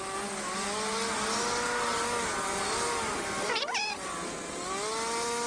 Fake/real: real